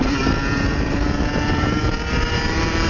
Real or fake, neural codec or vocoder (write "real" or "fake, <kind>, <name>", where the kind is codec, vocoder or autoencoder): fake, vocoder, BigVGAN v2